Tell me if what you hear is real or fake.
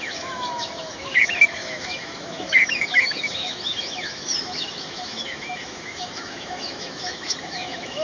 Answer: fake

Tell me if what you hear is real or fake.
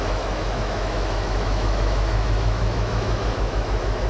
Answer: fake